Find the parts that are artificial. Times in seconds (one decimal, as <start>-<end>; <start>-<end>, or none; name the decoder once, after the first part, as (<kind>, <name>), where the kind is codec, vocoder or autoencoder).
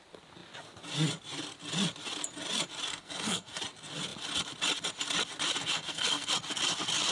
2.9-3.6 (codec, SNAC); 5.6-6.3